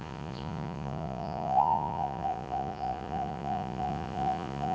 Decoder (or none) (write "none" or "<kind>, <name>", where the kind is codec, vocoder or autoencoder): vocoder, Vocos